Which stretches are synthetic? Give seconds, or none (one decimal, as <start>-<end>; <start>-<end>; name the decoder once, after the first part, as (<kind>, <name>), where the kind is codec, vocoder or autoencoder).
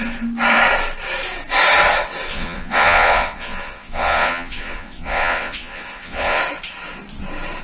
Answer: 2.3-6.4 (vocoder, Vocos)